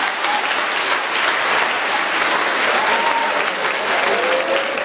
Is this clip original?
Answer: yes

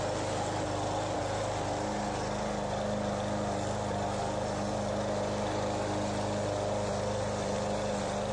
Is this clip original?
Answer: yes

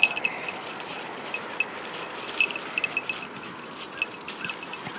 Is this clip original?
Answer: yes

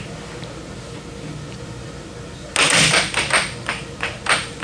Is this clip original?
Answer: yes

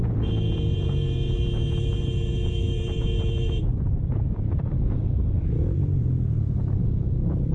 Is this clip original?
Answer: no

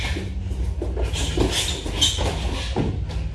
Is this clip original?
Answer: yes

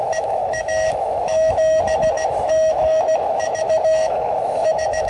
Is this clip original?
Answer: no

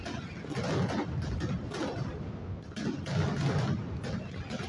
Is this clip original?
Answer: yes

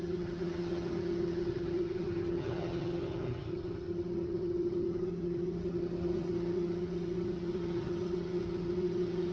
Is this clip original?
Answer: no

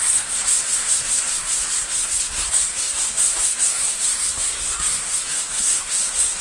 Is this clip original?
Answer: no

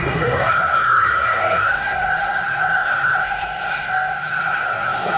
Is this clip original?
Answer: no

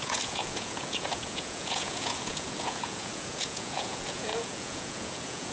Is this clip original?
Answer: no